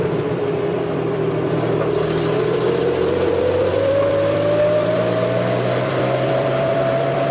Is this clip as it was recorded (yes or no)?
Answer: no